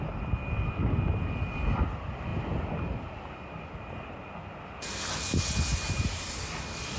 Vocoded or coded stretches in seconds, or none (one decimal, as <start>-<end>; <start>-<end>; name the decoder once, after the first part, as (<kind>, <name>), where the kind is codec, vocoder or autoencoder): none